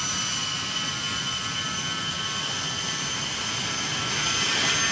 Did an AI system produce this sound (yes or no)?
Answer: no